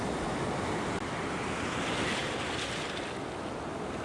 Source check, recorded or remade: recorded